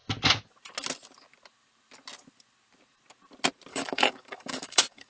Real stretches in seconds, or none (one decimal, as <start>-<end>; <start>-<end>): 0.0-3.7